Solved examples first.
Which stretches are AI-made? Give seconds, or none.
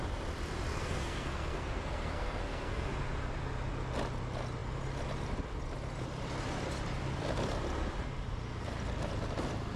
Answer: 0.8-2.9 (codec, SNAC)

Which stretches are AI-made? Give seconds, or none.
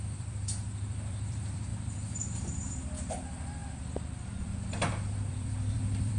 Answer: 0.0-3.6 (vocoder, BigVGAN v2); 4.4-6.2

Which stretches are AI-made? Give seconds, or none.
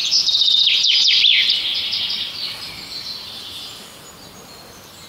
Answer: 0.0-1.1 (vocoder, Vocos)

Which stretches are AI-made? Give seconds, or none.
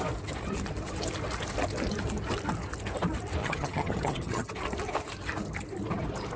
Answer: 3.4-4.5 (vocoder, HiFi-GAN)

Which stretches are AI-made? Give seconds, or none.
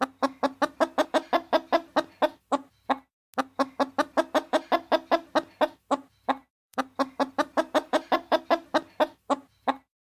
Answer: 6.4-8.4 (vocoder, BigVGAN v2)